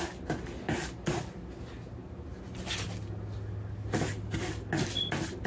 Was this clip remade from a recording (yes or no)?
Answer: no